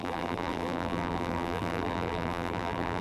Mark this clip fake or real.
fake